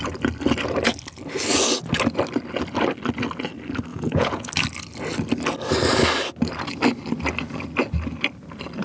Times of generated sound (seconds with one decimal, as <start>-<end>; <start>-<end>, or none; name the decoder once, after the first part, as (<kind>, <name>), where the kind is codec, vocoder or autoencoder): 3.9-4.5 (vocoder, Vocos)